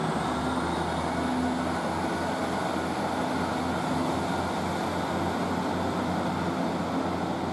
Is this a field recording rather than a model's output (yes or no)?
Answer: yes